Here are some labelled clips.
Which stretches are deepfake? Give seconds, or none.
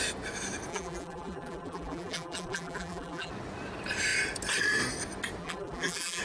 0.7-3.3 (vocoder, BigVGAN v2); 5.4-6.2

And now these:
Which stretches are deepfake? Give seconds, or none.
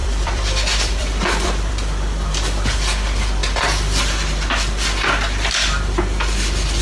0.0-1.7 (vocoder, BigVGAN v2)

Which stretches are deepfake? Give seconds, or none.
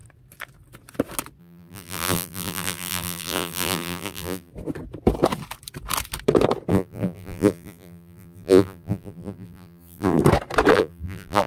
1.4-4.5 (vocoder, BigVGAN v2); 6.7-10.2; 10.7-11.5